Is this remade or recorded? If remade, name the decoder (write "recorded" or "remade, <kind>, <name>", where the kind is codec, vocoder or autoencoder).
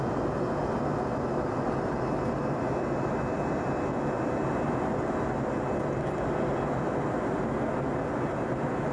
recorded